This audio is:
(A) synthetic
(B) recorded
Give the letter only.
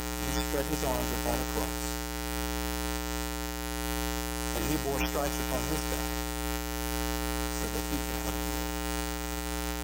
A